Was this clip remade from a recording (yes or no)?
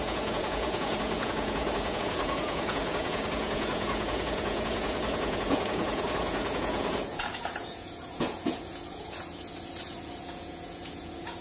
yes